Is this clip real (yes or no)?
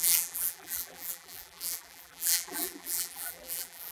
no